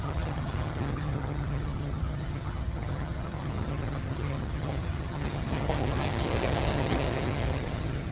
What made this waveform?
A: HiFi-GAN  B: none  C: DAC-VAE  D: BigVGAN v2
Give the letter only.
A